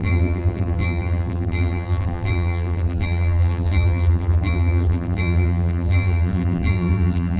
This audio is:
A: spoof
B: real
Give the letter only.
A